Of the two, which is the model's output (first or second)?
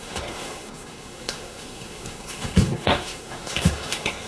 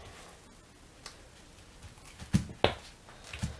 first